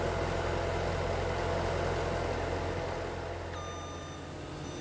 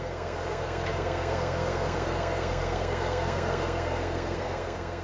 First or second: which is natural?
first